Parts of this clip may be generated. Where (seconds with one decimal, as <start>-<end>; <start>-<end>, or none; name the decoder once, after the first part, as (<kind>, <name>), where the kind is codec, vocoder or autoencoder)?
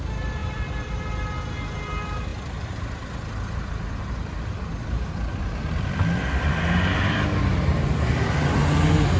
0.4-1.1 (vocoder, BigVGAN v2); 2.3-6.6